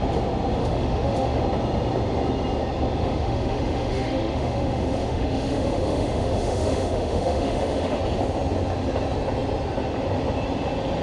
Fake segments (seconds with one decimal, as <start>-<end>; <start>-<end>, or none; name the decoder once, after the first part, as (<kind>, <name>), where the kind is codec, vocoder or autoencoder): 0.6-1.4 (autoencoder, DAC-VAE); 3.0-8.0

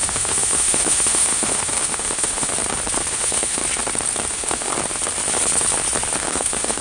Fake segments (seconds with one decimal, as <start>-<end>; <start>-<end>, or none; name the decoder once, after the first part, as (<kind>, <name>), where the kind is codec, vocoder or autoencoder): 0.0-2.5 (autoencoder, DAC-VAE); 3.1-3.6; 4.3-4.7; 6.2-6.8

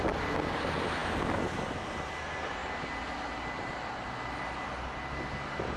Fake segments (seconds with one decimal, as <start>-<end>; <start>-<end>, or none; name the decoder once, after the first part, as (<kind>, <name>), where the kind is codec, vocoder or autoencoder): none

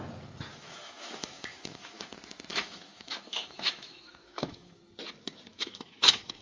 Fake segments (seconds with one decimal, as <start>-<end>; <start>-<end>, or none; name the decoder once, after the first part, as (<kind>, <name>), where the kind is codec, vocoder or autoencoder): 0.5-2.1 (autoencoder, DAC-VAE); 2.5-4.8; 5.5-6.4

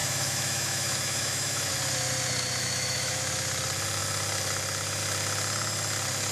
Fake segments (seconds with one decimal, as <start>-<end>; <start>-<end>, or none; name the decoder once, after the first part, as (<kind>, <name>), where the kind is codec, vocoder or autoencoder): 0.0-1.7 (autoencoder, DAC-VAE); 2.6-3.3